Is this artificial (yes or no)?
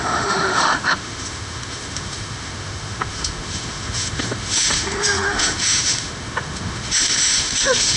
yes